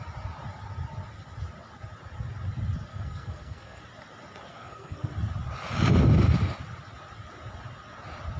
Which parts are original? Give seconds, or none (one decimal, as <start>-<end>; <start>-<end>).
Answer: 0.0-2.9; 3.8-4.5; 5.1-8.4